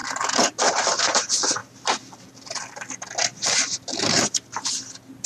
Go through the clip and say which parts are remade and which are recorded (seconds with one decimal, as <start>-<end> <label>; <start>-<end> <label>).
0.0-1.6 recorded; 1.6-2.9 remade; 2.9-3.3 recorded; 3.3-4.8 remade; 4.8-5.3 recorded